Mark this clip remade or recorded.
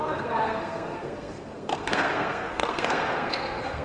remade